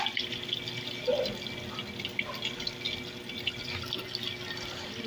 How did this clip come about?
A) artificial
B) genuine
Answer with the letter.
B